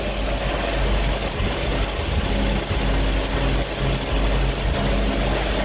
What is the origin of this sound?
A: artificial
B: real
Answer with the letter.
B